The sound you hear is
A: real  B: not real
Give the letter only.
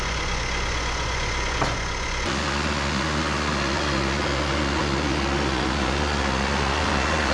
B